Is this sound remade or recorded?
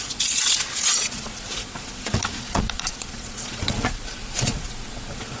remade